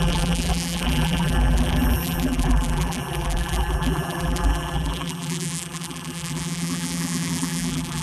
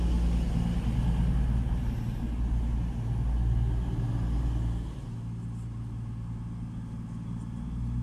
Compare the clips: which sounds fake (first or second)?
first